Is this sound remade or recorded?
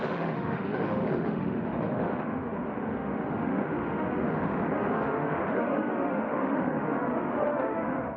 remade